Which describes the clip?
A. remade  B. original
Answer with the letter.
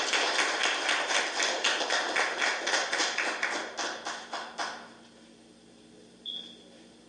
B